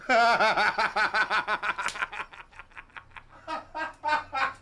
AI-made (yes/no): no